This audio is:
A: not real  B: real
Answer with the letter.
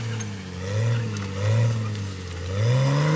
B